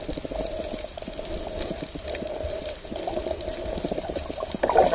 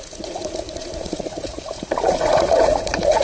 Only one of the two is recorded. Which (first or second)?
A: first